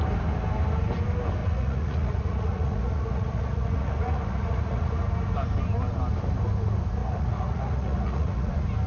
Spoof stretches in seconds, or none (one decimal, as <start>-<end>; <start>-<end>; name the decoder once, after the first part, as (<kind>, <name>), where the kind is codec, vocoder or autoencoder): 1.4-5.0 (vocoder, Vocos); 7.0-8.5

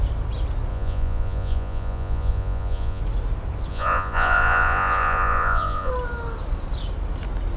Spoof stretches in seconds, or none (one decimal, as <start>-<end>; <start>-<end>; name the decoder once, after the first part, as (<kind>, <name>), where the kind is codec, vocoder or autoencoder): 0.7-3.0 (vocoder, Vocos); 3.7-5.9

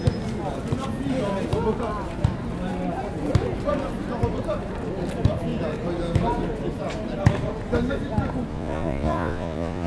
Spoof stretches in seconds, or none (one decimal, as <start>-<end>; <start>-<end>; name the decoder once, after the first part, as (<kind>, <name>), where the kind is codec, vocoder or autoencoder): 8.5-9.9 (vocoder, Vocos)